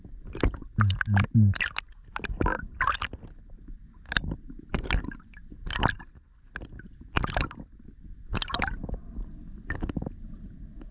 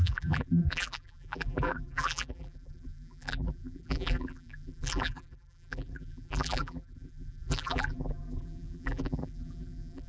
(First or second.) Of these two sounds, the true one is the first